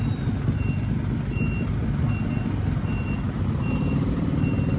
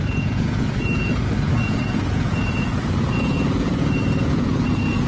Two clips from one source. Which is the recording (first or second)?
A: first